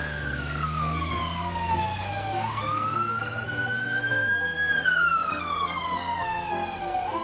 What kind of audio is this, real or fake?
fake